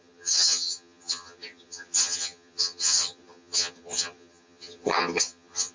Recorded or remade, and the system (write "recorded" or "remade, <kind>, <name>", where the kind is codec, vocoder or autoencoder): remade, vocoder, HiFi-GAN